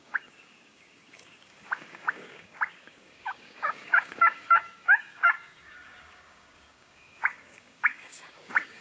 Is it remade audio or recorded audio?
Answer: remade